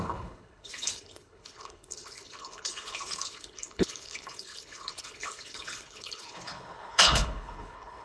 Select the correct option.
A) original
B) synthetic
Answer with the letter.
B